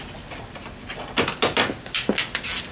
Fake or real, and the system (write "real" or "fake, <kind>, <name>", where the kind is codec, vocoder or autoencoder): real